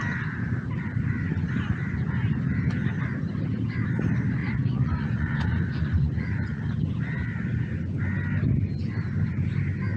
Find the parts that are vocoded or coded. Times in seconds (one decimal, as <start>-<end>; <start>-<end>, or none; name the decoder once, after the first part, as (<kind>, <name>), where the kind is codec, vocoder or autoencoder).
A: 4.4-6.6 (vocoder, Vocos)